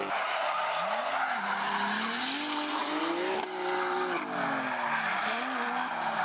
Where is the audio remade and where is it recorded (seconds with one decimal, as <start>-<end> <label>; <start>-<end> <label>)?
0.0-6.2 recorded